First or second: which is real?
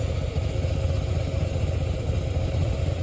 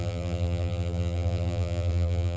first